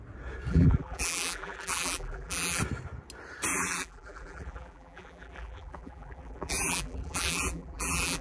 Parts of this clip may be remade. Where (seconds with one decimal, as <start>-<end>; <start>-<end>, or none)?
0.5-2.6; 3.5-8.2